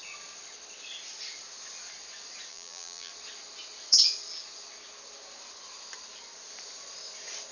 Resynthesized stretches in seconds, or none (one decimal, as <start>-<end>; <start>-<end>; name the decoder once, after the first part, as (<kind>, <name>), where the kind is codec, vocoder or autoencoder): 2.5-3.1 (vocoder, BigVGAN v2)